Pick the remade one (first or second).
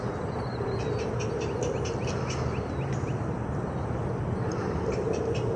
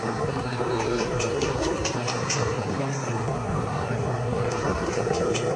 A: second